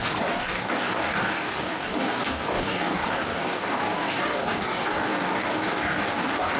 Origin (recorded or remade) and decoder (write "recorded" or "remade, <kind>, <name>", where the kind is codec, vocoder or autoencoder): remade, codec, DAC